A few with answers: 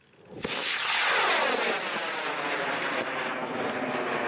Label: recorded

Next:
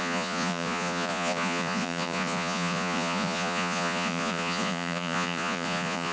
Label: remade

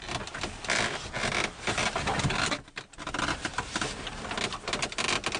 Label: recorded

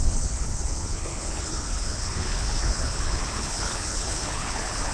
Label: remade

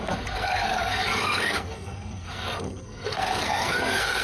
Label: remade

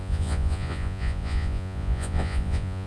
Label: remade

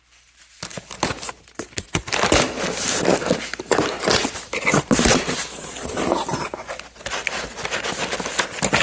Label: recorded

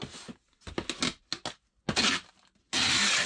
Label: recorded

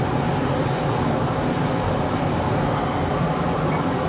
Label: recorded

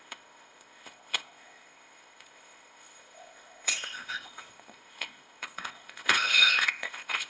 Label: remade